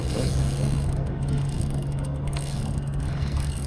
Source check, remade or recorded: remade